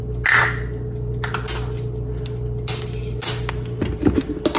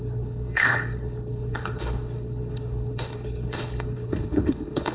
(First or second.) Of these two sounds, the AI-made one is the second